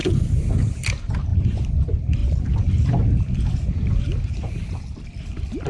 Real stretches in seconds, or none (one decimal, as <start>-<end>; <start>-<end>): 0.0-5.7